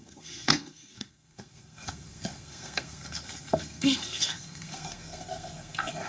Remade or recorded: remade